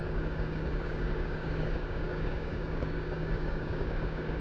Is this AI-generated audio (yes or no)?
yes